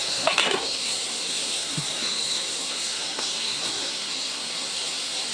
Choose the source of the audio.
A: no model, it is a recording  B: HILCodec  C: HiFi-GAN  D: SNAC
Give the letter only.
D